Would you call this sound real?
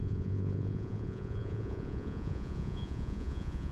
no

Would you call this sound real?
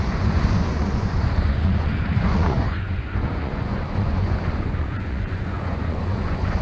no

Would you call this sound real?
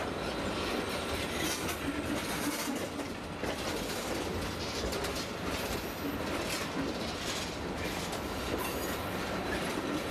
yes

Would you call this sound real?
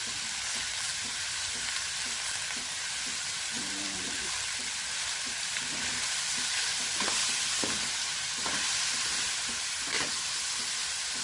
no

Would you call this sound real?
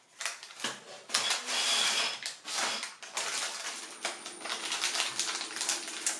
yes